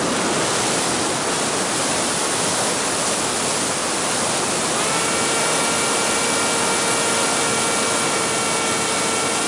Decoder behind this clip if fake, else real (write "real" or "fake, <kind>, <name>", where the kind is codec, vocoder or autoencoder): real